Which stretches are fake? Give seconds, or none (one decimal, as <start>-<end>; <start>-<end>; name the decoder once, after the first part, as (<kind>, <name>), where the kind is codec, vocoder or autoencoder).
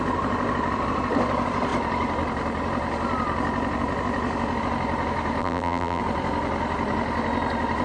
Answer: 5.4-6.0 (vocoder, BigVGAN v2)